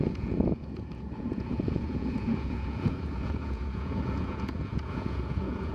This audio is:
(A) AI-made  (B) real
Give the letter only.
A